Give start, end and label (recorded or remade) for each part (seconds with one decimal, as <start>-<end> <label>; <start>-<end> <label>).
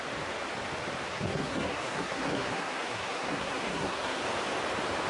0.0-1.1 recorded; 1.1-4.2 remade; 4.2-5.1 recorded